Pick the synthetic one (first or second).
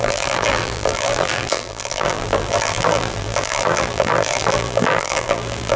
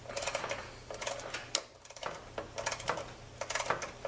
first